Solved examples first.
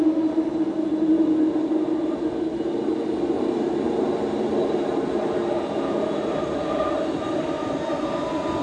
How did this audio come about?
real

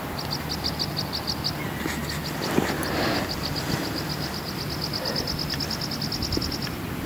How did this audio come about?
real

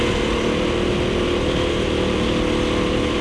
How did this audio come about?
real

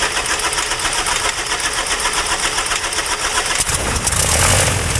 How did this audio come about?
real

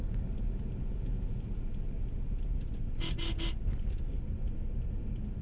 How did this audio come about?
real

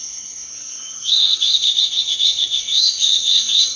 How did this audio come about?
fake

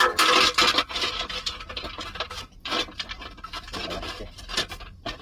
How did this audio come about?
real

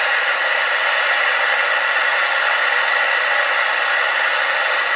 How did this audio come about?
real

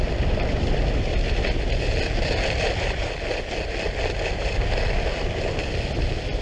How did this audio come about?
real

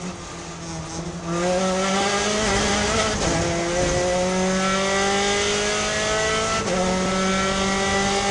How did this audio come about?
real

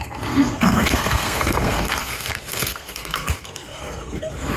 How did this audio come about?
fake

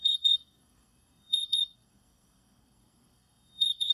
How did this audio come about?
fake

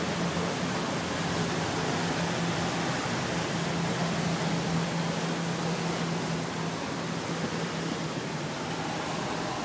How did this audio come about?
real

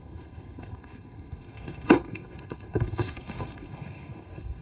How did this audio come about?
fake